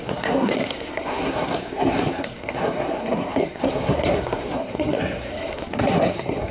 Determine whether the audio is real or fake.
fake